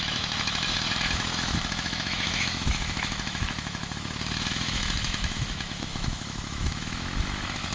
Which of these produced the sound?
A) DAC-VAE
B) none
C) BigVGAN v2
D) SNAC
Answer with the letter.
A